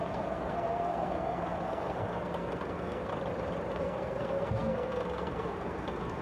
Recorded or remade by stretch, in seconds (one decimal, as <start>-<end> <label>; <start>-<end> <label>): 0.0-3.1 remade; 3.1-3.7 recorded; 3.7-6.2 remade